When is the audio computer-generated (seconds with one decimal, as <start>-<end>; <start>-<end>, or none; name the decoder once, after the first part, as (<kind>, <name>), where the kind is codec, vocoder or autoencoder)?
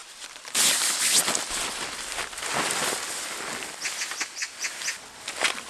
none